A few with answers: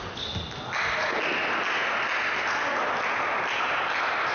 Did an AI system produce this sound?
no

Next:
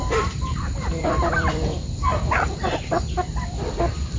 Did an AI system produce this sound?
yes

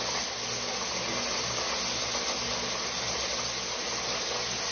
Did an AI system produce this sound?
no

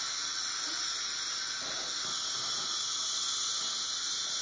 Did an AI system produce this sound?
no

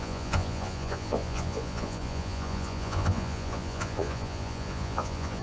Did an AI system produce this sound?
yes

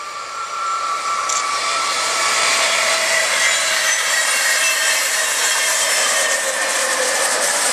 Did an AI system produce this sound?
yes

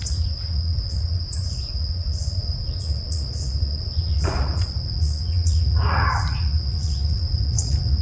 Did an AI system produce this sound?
yes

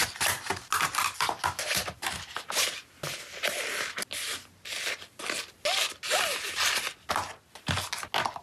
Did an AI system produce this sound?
no